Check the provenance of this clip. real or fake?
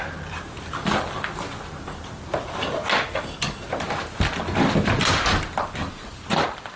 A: real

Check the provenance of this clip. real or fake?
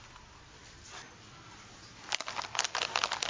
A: real